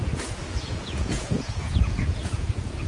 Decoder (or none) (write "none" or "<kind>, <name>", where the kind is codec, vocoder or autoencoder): vocoder, Vocos